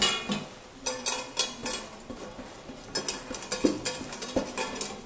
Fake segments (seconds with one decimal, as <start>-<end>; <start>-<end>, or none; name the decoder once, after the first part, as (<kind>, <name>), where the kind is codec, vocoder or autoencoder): none